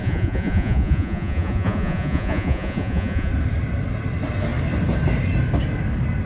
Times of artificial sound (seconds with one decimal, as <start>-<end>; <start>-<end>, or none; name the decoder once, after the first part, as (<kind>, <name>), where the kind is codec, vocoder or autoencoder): 0.0-3.3 (vocoder, Vocos)